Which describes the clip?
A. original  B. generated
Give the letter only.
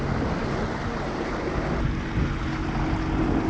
A